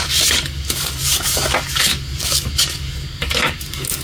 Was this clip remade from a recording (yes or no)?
yes